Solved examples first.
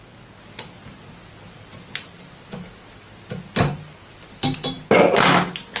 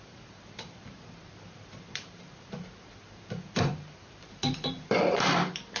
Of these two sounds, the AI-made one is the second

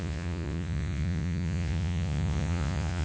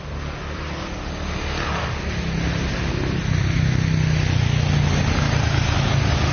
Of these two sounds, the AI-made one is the first